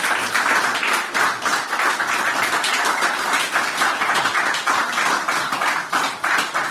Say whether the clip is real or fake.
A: fake